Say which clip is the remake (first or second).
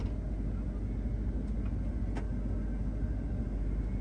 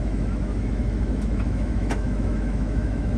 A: second